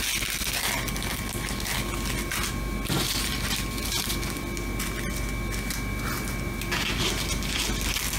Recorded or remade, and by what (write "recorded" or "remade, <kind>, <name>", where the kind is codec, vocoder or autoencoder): recorded